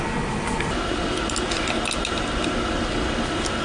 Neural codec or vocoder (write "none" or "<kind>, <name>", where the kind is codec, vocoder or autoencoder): none